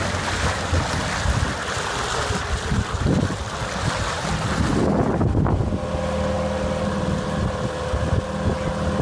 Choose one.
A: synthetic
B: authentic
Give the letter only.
B